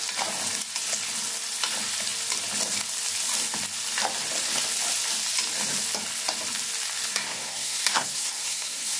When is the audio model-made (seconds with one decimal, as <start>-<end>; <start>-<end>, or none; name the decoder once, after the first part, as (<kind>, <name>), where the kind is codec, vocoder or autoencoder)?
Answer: 7.1-9.0 (codec, SNAC)